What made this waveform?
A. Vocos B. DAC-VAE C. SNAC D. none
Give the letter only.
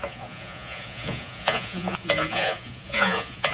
A